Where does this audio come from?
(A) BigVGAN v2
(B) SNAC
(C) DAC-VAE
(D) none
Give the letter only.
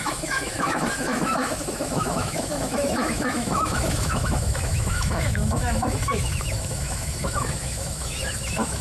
C